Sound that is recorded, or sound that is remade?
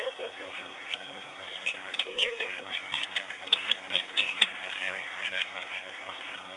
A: remade